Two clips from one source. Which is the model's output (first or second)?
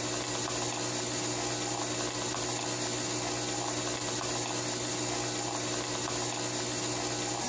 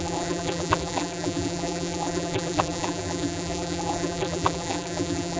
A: second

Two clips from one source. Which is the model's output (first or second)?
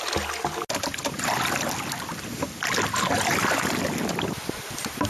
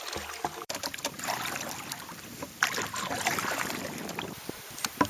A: second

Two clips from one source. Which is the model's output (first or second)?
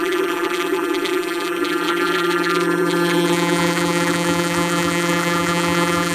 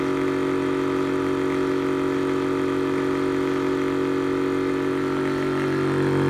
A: first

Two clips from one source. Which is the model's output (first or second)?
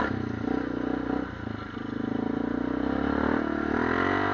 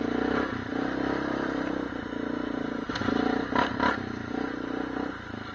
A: second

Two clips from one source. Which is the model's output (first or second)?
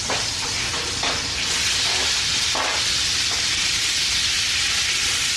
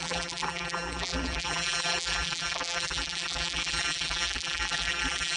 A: second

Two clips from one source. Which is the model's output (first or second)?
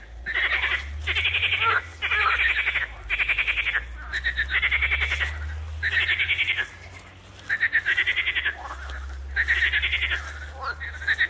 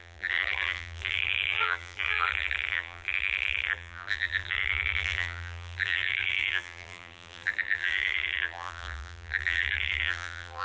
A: second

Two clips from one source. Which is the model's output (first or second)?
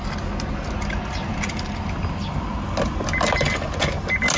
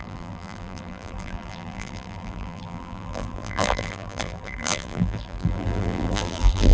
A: second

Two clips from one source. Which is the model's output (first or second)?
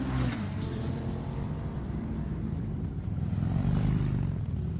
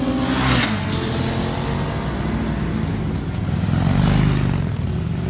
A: first